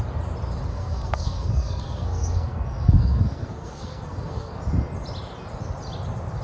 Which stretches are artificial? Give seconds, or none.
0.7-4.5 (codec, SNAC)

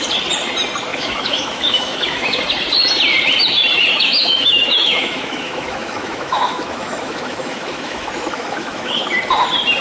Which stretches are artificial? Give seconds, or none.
0.9-2.4 (autoencoder, DAC-VAE); 3.9-9.1